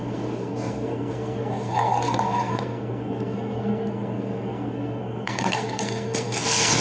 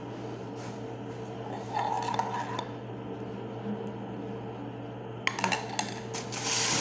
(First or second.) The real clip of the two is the second